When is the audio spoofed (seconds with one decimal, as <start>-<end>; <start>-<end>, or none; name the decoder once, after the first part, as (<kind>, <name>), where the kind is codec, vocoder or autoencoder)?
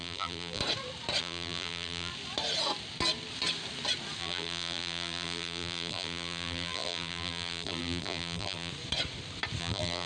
0.0-0.6 (vocoder, BigVGAN v2); 1.2-2.1; 4.2-8.7; 9.6-10.1